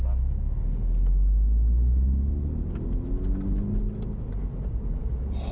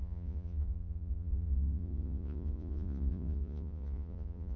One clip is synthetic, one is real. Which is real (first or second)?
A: first